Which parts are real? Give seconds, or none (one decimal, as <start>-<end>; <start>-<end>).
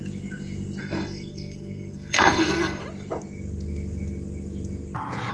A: 0.0-0.8; 2.8-5.3